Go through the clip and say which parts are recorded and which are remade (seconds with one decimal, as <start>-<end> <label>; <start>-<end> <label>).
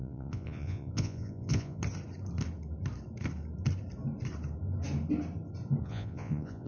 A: 0.0-1.8 remade; 1.8-5.8 recorded; 5.8-6.7 remade